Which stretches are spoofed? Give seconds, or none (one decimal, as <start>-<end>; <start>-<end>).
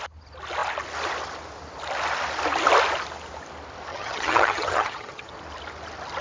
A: 3.9-5.3